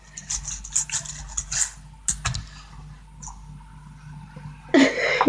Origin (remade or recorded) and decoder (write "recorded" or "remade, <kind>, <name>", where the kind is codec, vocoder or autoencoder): recorded